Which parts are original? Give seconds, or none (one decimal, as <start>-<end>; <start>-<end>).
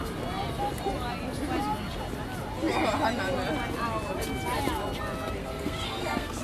0.0-5.4